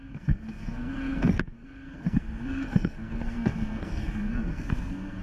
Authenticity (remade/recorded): remade